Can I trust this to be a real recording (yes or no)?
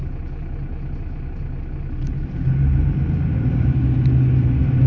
yes